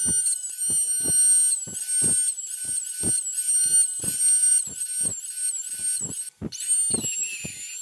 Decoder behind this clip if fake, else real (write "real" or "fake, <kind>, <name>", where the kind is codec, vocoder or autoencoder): real